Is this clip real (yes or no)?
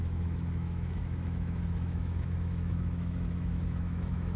no